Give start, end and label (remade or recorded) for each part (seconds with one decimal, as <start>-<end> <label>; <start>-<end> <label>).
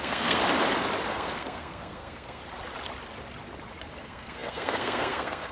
0.0-0.4 remade; 0.4-1.1 recorded; 1.1-2.4 remade; 2.4-4.0 recorded; 4.0-5.5 remade